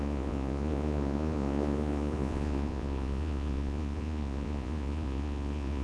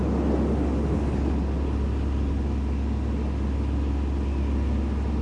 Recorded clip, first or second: second